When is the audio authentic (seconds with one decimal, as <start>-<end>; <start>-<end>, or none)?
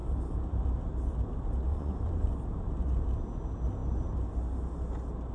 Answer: 0.0-1.7; 2.3-5.3